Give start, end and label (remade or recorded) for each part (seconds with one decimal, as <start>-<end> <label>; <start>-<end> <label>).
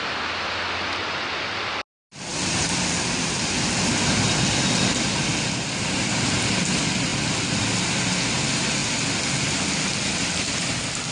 0.0-11.1 recorded